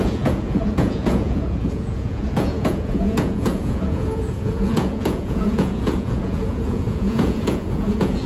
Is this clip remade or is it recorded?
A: remade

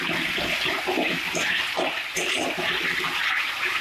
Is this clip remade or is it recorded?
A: recorded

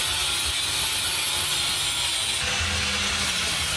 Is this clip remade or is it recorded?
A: recorded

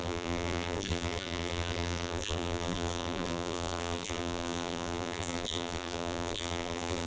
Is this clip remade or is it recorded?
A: remade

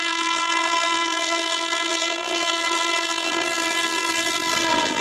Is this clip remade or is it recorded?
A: remade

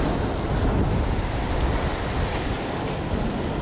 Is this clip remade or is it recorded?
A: recorded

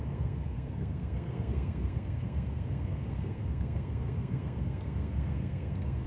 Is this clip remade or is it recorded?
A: remade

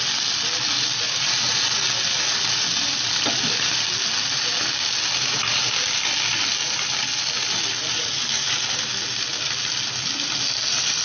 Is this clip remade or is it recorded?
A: recorded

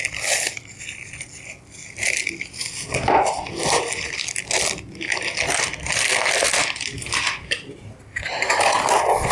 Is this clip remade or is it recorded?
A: recorded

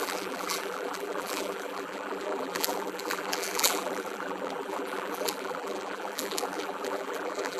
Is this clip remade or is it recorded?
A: remade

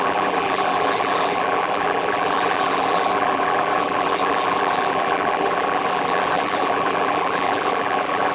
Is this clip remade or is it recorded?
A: remade